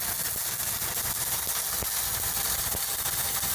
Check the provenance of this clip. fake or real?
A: real